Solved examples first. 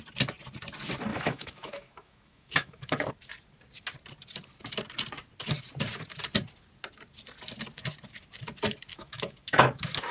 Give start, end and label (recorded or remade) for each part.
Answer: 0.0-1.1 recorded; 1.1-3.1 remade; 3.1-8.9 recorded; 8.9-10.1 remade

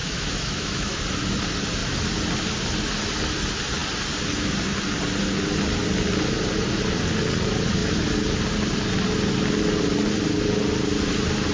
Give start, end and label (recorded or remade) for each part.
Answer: 0.0-1.0 remade; 1.0-11.5 recorded

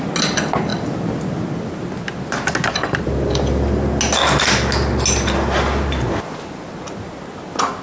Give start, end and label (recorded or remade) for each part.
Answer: 0.0-7.8 recorded

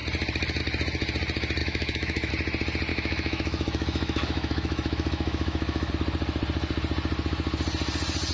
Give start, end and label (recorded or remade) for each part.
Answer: 0.0-1.6 recorded; 1.6-2.3 remade; 2.3-2.9 recorded; 2.9-5.9 remade; 5.9-8.3 recorded

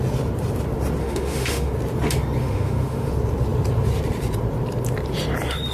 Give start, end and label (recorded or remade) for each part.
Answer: 0.0-1.0 recorded; 1.0-1.7 remade; 1.7-2.4 recorded; 2.4-3.1 remade; 3.1-5.7 recorded